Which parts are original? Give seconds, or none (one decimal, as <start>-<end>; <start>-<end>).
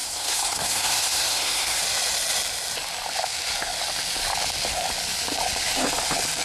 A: 1.8-6.4